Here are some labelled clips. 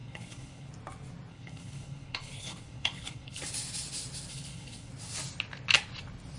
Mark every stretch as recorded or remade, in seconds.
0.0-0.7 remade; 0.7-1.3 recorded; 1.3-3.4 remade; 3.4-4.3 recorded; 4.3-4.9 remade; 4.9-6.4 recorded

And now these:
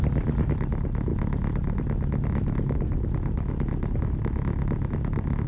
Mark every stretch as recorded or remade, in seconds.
0.0-5.5 recorded

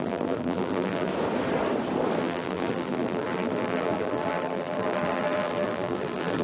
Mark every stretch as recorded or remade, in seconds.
0.0-1.1 remade; 1.1-2.2 recorded; 2.2-6.4 remade

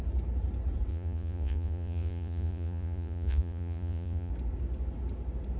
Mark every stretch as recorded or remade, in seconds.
0.0-0.9 recorded; 0.9-4.3 remade; 4.3-5.6 recorded

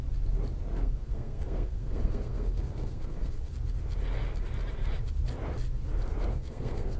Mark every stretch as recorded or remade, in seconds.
0.0-0.7 recorded; 0.7-3.5 remade; 3.5-6.3 recorded; 6.3-7.0 remade

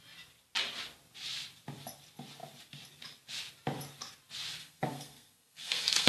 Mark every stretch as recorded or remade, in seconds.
0.0-4.6 recorded; 4.6-6.1 remade

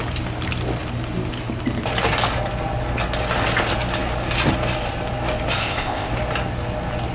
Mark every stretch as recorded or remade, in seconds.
0.0-5.6 recorded; 5.6-6.1 remade; 6.1-7.1 recorded

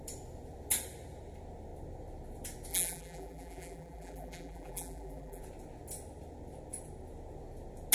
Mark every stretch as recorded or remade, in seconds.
0.0-2.7 recorded; 2.7-5.4 remade; 5.4-7.9 recorded